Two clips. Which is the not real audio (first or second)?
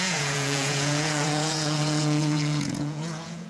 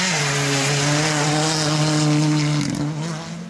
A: first